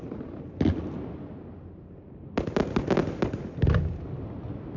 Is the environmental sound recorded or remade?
recorded